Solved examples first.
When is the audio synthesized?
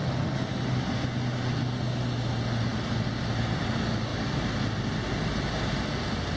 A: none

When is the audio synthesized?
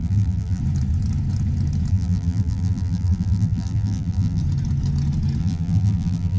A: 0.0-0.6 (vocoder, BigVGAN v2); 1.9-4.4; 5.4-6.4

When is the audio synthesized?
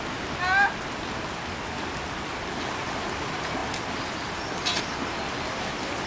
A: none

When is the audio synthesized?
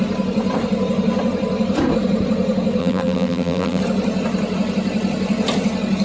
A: 2.8-3.8 (vocoder, BigVGAN v2)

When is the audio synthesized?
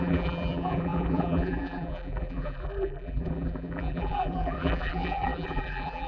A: 0.0-6.1 (vocoder, BigVGAN v2)